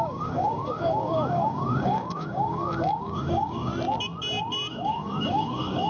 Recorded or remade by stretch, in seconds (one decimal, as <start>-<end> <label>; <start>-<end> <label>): 0.0-3.7 remade; 3.7-4.7 recorded; 4.7-5.9 remade